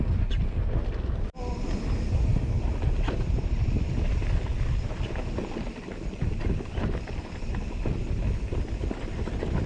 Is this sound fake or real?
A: real